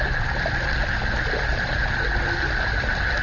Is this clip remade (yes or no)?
no